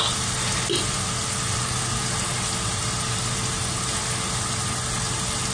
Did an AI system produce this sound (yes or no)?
no